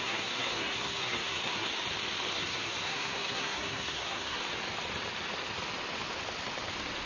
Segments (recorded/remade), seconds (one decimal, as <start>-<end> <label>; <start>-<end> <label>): 0.0-1.7 remade; 1.7-2.3 recorded; 2.3-4.4 remade; 4.4-7.1 recorded